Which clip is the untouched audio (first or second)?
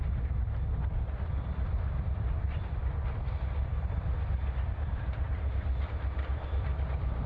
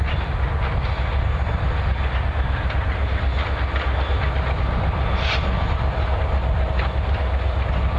second